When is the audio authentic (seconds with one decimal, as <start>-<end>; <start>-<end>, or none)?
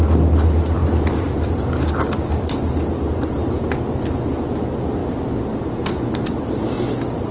0.0-7.3